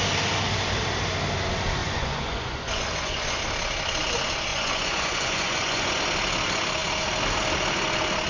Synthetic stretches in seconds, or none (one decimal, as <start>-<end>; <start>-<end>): 1.8-3.4; 4.5-5.9